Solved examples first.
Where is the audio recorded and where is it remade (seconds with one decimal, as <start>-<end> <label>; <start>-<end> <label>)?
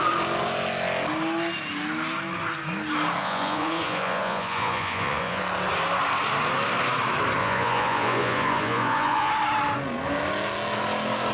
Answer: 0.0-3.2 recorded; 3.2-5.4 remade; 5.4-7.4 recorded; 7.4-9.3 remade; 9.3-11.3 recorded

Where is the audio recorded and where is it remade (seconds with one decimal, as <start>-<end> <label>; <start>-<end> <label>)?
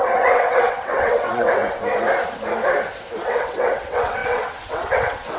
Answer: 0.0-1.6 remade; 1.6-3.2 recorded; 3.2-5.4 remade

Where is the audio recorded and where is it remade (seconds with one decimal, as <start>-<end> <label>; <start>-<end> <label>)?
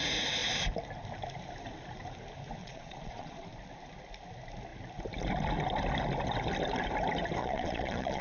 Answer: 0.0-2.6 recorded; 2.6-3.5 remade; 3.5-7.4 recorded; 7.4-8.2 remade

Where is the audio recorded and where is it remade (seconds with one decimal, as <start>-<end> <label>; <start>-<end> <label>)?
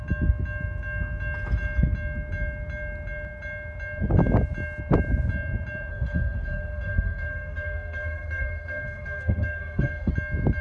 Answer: 0.0-5.9 recorded; 5.9-10.1 remade; 10.1-10.6 recorded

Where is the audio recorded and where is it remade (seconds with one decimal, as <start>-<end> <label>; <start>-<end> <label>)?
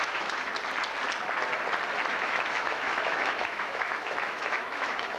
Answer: 0.0-0.5 remade; 0.5-2.1 recorded; 2.1-5.2 remade